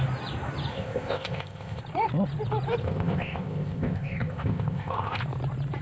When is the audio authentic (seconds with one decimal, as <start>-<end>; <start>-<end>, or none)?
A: 0.0-0.7; 1.8-2.8; 5.2-5.8

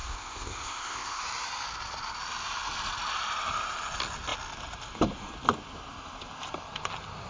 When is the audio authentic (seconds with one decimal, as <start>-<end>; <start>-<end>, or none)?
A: 1.2-7.3

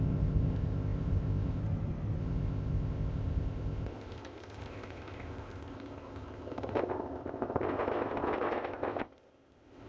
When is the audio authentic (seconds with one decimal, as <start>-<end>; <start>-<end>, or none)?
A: 1.6-2.2

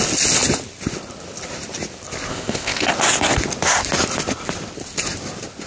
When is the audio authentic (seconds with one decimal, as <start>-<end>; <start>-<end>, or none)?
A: 0.0-2.3; 2.9-5.7

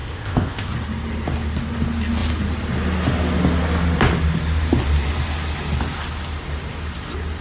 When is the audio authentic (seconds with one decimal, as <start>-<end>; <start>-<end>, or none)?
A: 0.7-7.4

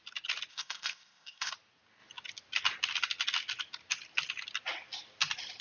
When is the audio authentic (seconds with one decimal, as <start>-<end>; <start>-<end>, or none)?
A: 0.0-0.5; 1.5-5.6